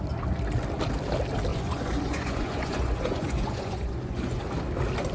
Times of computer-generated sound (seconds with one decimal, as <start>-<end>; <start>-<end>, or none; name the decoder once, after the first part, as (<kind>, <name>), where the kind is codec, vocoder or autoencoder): 1.5-4.4 (vocoder, Vocos)